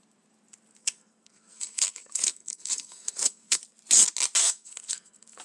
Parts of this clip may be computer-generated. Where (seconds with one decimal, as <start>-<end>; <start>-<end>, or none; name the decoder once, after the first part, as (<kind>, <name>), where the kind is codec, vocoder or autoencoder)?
0.8-3.6 (codec, SNAC); 4.4-5.4